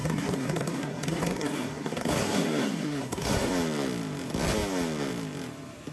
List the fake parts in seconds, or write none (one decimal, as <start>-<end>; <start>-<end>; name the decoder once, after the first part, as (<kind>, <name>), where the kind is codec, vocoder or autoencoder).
0.0-3.5 (codec, SNAC)